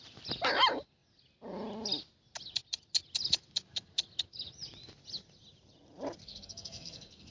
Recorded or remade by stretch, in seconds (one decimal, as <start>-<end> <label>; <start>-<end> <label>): 0.0-6.2 recorded; 6.2-7.3 remade